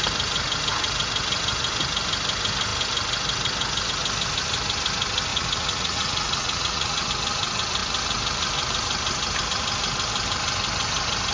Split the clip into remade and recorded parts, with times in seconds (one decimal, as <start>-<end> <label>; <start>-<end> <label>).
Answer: 0.0-5.3 recorded; 5.3-7.1 remade; 7.1-11.3 recorded